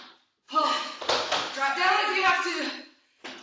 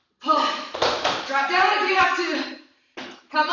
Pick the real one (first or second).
first